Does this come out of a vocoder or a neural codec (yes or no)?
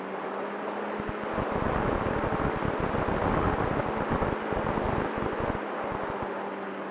no